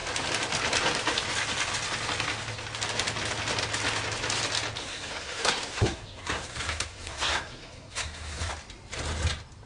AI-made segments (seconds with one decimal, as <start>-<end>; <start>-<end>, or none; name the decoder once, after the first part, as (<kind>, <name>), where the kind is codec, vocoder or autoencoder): 4.8-8.5 (codec, SNAC)